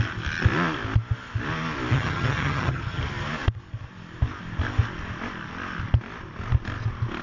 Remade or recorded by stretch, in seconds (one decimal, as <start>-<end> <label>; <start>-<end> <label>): 0.0-1.9 recorded; 1.9-3.0 remade; 3.0-7.2 recorded